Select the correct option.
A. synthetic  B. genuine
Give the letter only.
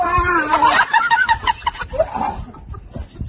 B